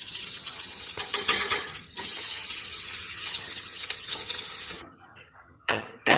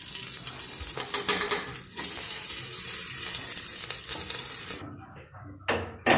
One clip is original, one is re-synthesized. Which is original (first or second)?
second